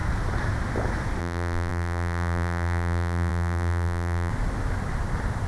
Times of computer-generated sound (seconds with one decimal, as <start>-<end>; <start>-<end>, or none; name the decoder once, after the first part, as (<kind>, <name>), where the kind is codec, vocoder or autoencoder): 1.2-4.3 (vocoder, BigVGAN v2)